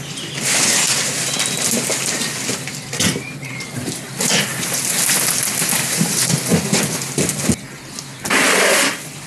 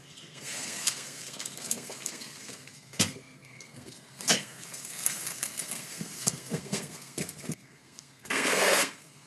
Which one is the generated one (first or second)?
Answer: second